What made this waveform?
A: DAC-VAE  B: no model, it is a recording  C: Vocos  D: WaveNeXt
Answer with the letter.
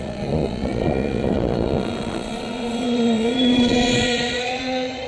C